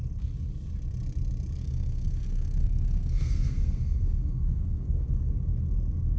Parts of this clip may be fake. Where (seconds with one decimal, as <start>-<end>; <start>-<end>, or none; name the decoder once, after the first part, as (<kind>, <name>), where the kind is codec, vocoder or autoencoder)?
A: 1.6-5.3 (codec, SNAC)

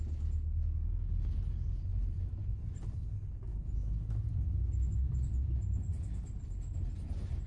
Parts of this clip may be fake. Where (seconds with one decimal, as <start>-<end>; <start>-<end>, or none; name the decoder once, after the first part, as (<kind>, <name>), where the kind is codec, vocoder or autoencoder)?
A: 1.9-2.8 (vocoder, BigVGAN v2)

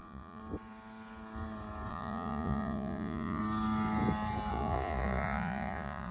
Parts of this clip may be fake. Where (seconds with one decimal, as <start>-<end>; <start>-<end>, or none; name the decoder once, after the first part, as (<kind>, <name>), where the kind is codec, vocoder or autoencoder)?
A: 0.0-0.4 (vocoder, Vocos); 1.9-3.4; 4.5-6.1

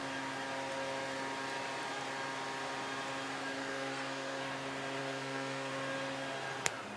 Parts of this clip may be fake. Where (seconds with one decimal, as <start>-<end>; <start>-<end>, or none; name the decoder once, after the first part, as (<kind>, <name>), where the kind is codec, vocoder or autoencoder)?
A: 3.6-4.4 (codec, SNAC); 5.0-5.7

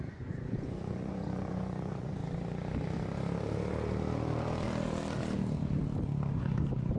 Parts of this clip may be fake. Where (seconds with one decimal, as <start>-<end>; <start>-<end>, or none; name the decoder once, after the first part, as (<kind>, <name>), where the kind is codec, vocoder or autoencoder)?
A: 0.0-2.2 (vocoder, Vocos); 6.4-7.0